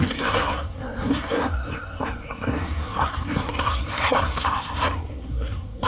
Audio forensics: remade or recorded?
remade